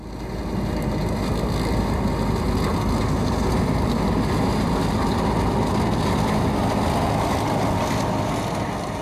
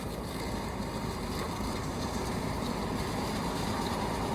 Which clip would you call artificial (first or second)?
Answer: second